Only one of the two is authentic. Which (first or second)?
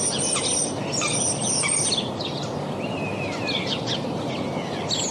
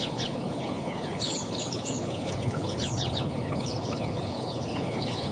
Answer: first